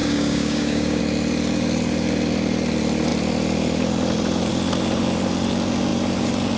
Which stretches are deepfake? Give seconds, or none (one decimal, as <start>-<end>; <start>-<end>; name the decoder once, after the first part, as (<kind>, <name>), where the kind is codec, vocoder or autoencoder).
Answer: 0.0-1.0 (codec, DAC)

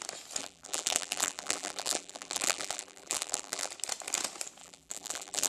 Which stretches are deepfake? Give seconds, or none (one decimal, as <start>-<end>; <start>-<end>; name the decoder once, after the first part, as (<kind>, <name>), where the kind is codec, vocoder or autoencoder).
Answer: 0.4-3.7 (vocoder, BigVGAN v2); 4.6-5.5

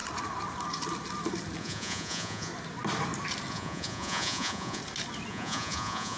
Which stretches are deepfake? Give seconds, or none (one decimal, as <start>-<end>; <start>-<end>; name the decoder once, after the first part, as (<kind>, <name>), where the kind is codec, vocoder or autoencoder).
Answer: 1.6-2.5 (vocoder, Vocos); 3.5-4.8; 5.3-6.2

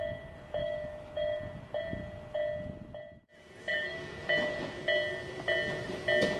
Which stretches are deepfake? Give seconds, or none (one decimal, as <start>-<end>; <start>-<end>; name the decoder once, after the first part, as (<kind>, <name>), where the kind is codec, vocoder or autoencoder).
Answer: 0.6-1.4 (autoencoder, DAC-VAE); 3.7-4.6

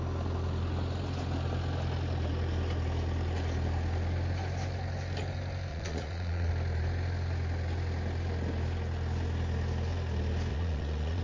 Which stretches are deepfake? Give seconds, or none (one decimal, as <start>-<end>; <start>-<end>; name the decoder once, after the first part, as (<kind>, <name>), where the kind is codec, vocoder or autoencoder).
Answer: 5.7-6.5 (vocoder, Vocos); 10.5-11.2

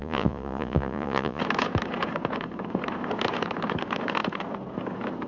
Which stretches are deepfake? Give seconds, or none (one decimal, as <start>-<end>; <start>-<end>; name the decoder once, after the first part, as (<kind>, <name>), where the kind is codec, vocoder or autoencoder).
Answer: 0.0-1.4 (vocoder, Vocos)

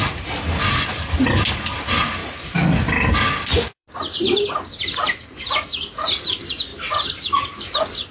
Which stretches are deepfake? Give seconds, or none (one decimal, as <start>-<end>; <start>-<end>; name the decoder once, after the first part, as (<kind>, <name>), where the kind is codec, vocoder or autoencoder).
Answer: 0.0-8.1 (vocoder, BigVGAN v2)